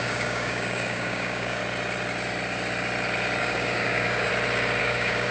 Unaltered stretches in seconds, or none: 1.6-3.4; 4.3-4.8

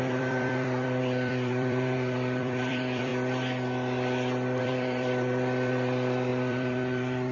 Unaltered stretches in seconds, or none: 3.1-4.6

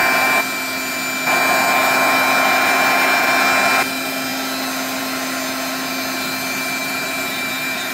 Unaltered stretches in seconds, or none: 0.0-6.8

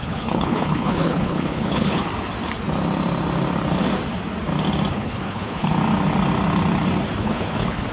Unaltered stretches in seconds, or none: 2.1-4.9; 5.7-7.2

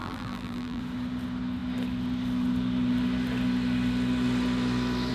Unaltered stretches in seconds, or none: 0.8-5.1

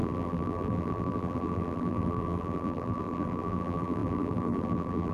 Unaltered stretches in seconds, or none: none

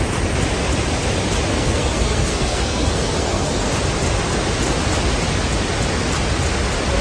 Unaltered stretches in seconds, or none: 0.0-1.5; 3.7-7.0

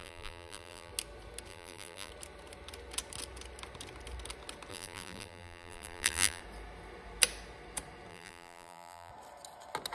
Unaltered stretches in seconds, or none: 0.9-1.5; 2.1-4.7; 6.4-8.1; 9.1-9.9